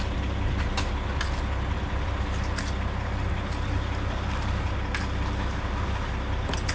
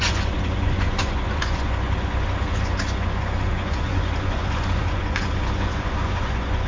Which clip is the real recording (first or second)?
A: first